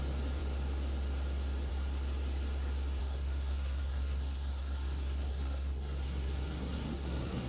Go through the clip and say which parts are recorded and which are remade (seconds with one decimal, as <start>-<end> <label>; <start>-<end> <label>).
0.0-3.0 recorded; 3.0-7.5 remade